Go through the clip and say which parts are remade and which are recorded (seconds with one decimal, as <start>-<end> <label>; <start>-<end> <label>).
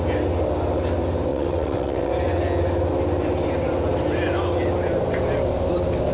0.0-1.3 recorded; 1.3-2.1 remade; 2.1-6.1 recorded